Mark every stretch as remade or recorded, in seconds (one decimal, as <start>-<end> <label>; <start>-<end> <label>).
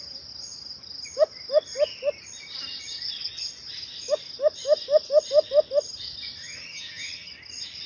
0.0-6.4 recorded; 6.4-7.3 remade; 7.3-7.9 recorded